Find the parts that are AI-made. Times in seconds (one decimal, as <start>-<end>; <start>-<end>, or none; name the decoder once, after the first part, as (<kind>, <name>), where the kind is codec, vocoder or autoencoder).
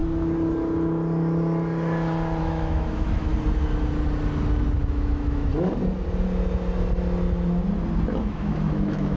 2.4-3.3 (autoencoder, DAC-VAE); 4.8-5.5; 8.2-9.2